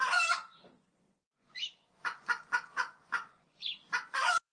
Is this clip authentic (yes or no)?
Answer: no